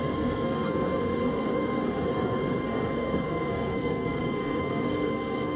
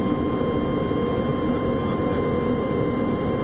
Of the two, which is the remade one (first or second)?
first